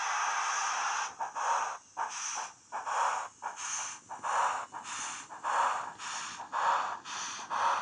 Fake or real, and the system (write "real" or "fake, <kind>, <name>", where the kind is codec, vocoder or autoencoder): real